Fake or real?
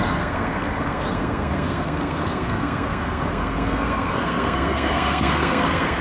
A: fake